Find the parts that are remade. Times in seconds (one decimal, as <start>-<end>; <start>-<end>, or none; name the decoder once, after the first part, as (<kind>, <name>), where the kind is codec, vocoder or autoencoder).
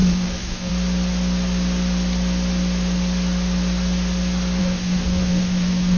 0.0-0.7 (codec, SNAC); 4.6-6.0